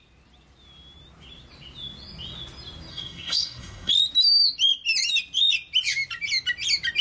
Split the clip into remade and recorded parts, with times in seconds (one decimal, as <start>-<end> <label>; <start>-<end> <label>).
0.0-2.9 recorded; 2.9-3.9 remade; 3.9-7.0 recorded